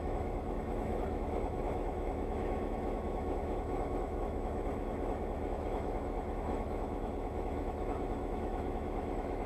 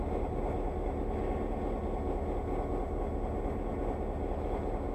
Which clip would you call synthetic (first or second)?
first